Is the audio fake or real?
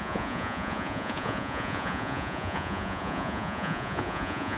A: fake